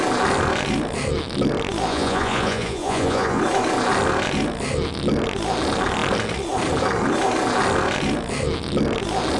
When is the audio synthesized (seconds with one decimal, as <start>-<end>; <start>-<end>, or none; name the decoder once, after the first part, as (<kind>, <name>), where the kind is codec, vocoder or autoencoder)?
1.9-3.4 (vocoder, Vocos)